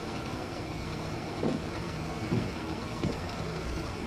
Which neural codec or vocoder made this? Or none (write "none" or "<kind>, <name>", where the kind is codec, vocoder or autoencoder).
codec, SNAC